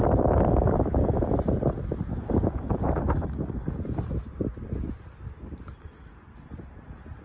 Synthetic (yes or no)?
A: no